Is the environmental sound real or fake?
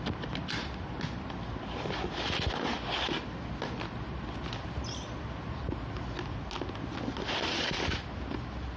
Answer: real